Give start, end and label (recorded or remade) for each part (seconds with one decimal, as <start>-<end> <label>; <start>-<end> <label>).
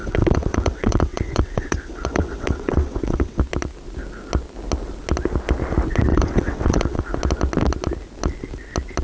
0.0-3.4 remade; 3.4-6.1 recorded; 6.1-7.0 remade; 7.0-9.0 recorded